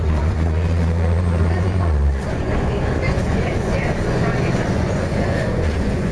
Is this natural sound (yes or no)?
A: no